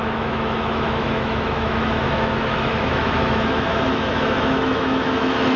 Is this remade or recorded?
remade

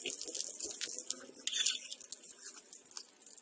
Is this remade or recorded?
recorded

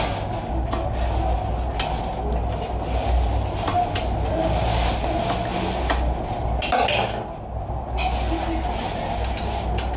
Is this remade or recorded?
recorded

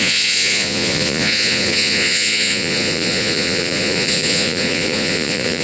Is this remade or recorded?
remade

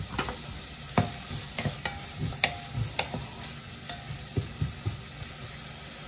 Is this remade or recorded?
recorded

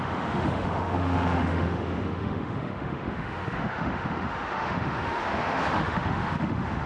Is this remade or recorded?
remade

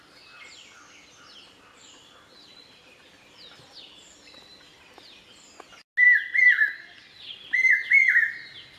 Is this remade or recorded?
recorded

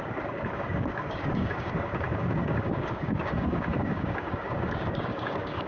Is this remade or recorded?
remade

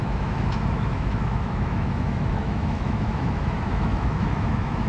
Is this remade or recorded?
remade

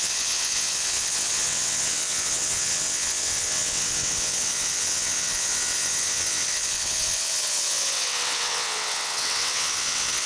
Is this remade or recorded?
remade